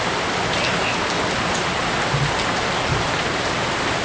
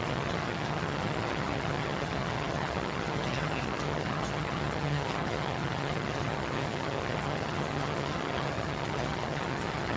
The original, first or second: first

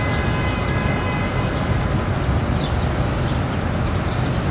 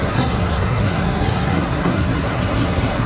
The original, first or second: first